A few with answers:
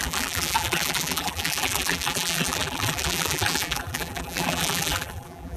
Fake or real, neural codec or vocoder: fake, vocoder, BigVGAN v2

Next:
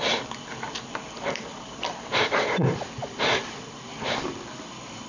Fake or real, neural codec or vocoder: fake, vocoder, BigVGAN v2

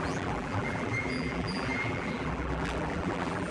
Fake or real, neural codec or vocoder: fake, vocoder, BigVGAN v2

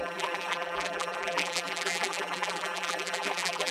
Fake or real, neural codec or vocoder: fake, vocoder, BigVGAN v2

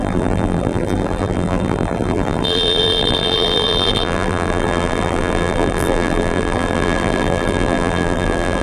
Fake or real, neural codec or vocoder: fake, vocoder, BigVGAN v2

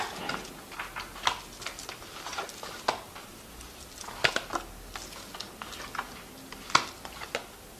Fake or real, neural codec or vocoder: real